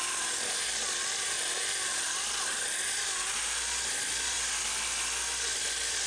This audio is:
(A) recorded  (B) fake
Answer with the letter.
A